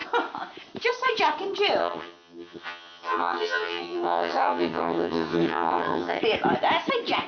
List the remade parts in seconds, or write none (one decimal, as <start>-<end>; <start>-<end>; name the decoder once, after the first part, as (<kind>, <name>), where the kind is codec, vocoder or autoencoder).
1.8-6.2 (vocoder, HiFi-GAN)